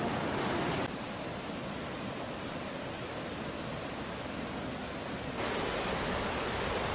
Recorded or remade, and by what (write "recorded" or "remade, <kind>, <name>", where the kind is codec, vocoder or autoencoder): recorded